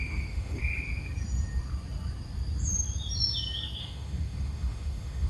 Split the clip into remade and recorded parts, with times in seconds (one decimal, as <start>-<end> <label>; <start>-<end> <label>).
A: 0.0-0.6 remade; 0.6-3.8 recorded; 3.8-5.3 remade